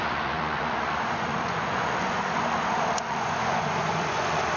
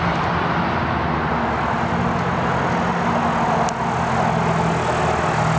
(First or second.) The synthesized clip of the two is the first